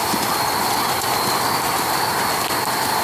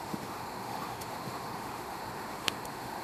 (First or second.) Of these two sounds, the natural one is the first